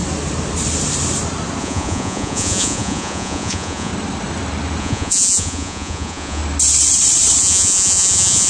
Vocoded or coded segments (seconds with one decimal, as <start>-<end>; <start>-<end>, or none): 1.6-3.9; 4.8-6.4; 7.4-8.5